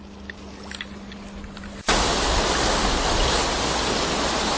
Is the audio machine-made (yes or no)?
no